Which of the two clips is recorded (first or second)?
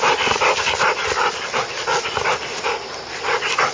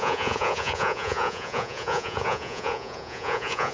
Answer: first